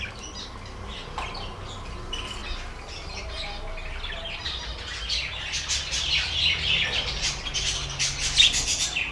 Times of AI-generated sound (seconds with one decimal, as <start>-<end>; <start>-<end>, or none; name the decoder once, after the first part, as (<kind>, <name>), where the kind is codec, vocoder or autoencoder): none